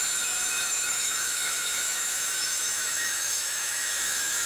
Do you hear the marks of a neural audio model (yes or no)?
yes